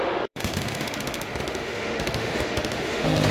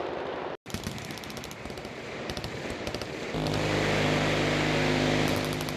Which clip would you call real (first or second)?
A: second